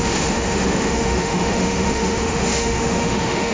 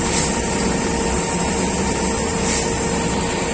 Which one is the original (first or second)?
second